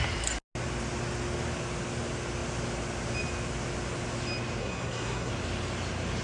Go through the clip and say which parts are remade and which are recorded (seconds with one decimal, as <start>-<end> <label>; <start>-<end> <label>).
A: 0.0-4.6 recorded; 4.6-5.3 remade; 5.3-6.2 recorded